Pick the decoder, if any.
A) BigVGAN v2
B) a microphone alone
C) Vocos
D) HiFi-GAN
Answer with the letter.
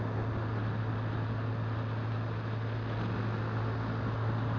B